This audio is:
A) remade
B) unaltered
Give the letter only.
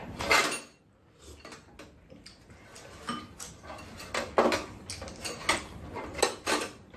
B